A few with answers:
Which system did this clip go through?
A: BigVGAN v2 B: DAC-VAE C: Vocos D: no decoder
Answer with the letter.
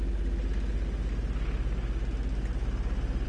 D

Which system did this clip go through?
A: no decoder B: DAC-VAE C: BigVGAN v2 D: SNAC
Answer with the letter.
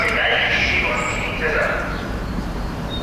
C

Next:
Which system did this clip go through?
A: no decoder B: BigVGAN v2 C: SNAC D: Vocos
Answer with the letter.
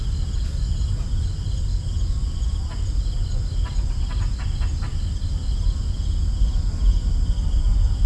A